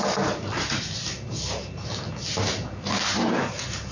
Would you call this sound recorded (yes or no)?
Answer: yes